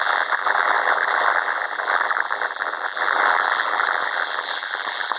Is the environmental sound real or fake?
fake